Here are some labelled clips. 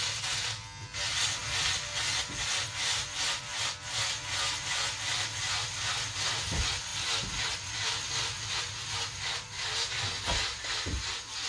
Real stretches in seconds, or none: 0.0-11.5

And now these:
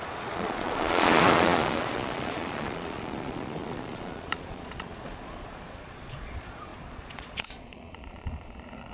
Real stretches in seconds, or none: none

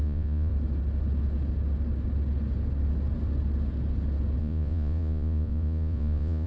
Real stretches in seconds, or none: 0.5-4.4

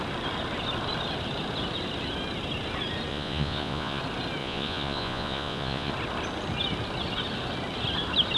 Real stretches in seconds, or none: 0.0-3.1; 4.0-4.4; 5.9-8.4

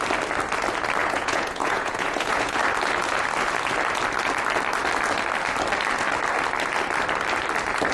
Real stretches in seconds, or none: 0.0-1.0; 2.6-7.9

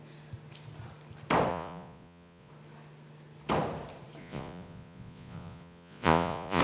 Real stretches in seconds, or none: 0.0-1.5; 2.5-4.2